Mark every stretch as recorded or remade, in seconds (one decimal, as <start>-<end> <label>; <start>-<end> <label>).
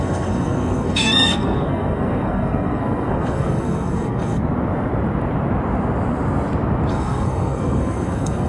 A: 0.0-4.4 remade; 4.4-6.9 recorded; 6.9-8.5 remade